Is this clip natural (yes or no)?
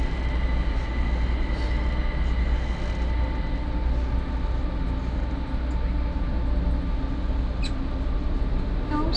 yes